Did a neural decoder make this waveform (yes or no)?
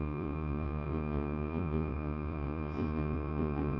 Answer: yes